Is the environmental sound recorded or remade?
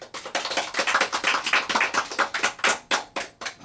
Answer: recorded